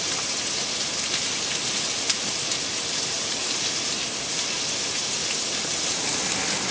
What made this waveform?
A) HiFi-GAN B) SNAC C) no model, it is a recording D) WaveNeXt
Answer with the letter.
C